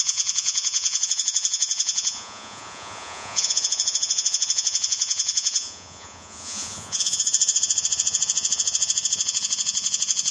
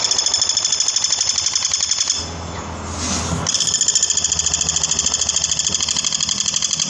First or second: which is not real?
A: first